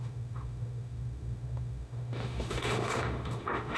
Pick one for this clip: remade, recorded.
remade